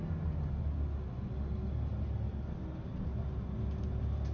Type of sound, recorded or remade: recorded